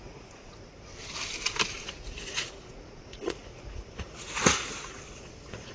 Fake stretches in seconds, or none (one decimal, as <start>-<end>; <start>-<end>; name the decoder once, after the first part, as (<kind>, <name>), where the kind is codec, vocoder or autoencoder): 0.0-0.9 (vocoder, Vocos); 1.7-5.7